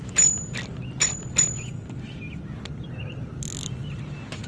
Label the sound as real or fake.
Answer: real